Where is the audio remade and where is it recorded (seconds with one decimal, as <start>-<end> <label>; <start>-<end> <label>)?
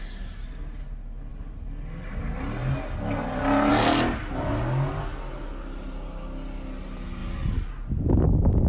0.0-8.7 recorded